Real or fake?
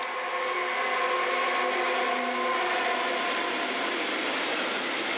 real